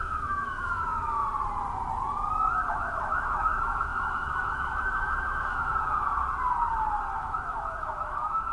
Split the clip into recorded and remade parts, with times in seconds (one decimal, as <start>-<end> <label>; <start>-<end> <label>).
0.0-1.2 remade; 1.2-2.7 recorded; 2.7-5.7 remade; 5.7-7.2 recorded; 7.2-8.5 remade